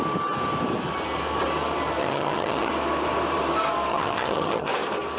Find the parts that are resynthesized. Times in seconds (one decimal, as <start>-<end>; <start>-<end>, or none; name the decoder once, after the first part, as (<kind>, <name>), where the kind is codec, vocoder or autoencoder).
2.0-2.7 (vocoder, HiFi-GAN); 3.9-4.7